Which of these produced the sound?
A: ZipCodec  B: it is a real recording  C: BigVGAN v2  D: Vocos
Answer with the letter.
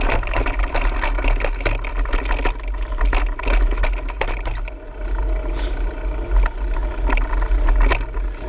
B